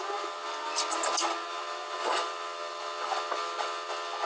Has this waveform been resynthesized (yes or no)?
no